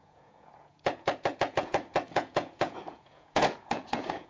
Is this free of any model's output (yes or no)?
no